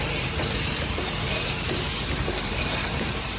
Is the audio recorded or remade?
remade